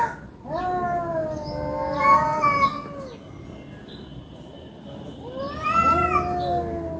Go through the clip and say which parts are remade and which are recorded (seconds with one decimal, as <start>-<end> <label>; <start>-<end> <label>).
0.0-7.0 recorded